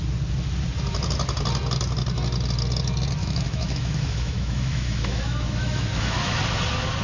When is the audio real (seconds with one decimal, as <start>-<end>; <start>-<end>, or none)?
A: 0.0-3.2; 6.4-7.0